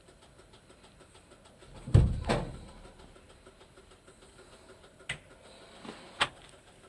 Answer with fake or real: real